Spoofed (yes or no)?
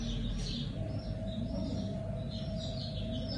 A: no